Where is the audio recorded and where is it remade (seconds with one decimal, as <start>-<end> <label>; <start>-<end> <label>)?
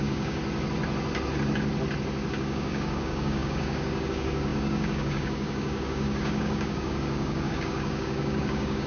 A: 0.0-0.4 remade; 0.4-2.3 recorded; 2.3-8.9 remade